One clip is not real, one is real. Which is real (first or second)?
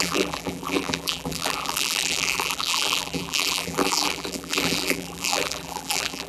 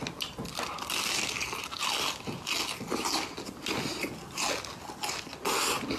second